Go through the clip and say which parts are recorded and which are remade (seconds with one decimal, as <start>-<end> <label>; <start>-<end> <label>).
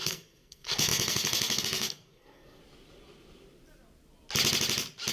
0.0-2.6 remade; 2.6-5.1 recorded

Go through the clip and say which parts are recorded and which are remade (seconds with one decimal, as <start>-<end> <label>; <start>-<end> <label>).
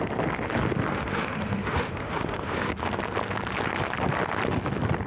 0.0-0.9 recorded; 0.9-2.7 remade; 2.7-5.1 recorded